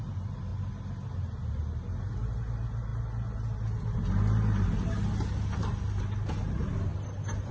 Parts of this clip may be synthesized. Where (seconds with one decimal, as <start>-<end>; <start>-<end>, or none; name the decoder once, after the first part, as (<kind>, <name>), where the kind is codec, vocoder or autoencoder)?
none